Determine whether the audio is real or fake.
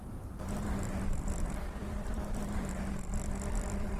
fake